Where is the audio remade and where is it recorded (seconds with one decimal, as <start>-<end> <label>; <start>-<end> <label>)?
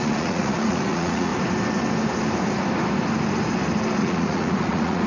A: 0.0-1.3 remade; 1.3-4.0 recorded; 4.0-5.1 remade